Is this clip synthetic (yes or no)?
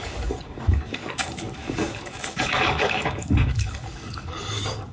yes